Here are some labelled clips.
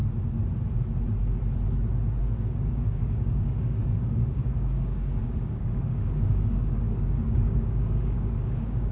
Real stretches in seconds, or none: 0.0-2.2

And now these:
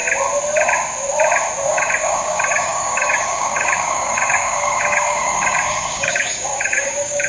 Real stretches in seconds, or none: 0.0-1.7

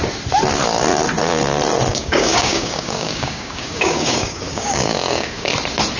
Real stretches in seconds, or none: 0.0-1.9; 5.5-6.0

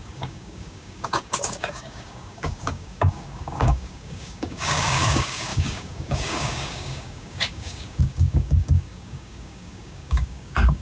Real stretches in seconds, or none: none

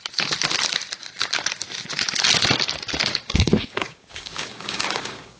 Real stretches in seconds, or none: 0.0-3.1

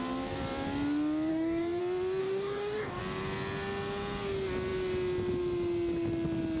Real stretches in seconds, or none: 0.0-1.3; 1.8-2.2; 3.0-6.6

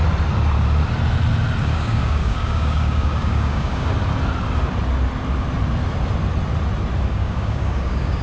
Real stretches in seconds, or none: 0.0-1.6; 3.9-7.1